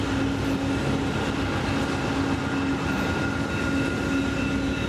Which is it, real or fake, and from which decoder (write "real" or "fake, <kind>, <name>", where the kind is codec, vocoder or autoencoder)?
real